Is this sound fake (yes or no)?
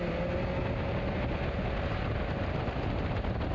no